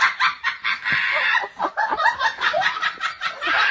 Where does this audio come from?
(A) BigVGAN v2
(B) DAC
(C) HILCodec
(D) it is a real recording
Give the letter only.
A